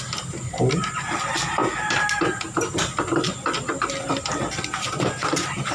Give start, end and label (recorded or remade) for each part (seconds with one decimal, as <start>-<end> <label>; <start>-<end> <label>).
0.0-5.7 recorded

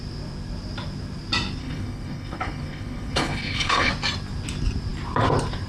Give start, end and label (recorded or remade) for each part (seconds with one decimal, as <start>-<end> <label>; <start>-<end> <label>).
0.0-1.6 recorded; 1.6-3.9 remade; 3.9-5.7 recorded